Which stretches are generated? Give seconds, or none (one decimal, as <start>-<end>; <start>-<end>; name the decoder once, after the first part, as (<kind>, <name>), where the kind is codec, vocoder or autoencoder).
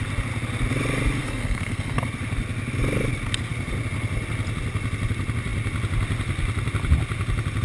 1.2-2.0 (codec, SNAC)